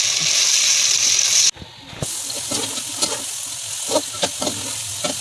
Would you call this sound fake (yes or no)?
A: no